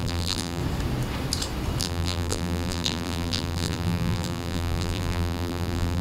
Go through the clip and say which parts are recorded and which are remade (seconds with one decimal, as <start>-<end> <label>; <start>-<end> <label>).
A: 0.0-0.6 remade; 0.6-1.8 recorded; 1.8-6.0 remade